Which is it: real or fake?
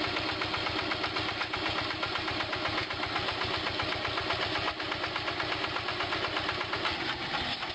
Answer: real